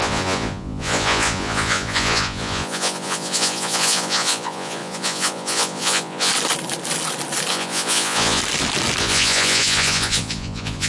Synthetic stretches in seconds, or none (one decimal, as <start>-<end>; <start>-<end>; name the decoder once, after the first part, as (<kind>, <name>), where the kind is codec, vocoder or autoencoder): 0.0-6.3 (vocoder, Vocos); 7.5-8.4; 9.0-10.9